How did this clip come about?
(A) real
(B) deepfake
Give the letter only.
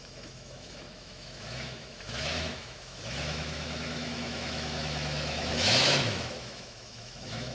B